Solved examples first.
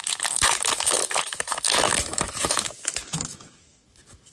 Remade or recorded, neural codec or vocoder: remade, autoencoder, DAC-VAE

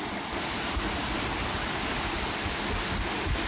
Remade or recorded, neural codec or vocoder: recorded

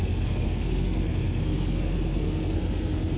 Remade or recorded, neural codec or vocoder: remade, codec, SNAC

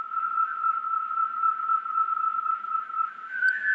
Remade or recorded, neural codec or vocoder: recorded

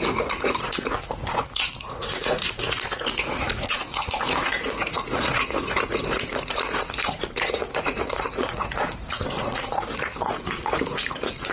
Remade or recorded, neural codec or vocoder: remade, vocoder, Vocos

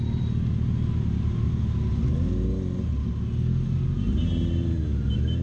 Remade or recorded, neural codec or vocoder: recorded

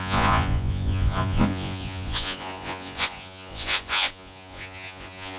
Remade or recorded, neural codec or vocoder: remade, vocoder, Vocos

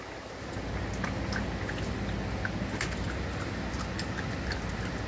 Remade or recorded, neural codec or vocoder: recorded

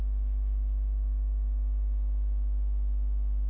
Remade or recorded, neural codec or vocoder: recorded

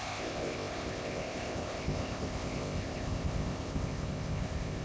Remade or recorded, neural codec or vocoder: remade, codec, ZipCodec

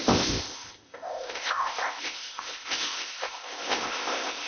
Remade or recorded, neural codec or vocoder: remade, codec, ZipCodec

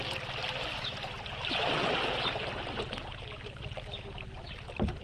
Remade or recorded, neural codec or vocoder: recorded